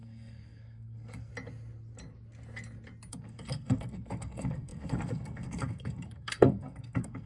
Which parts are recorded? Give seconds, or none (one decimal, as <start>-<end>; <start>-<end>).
1.3-3.1